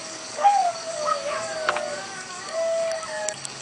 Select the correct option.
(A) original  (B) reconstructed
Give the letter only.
B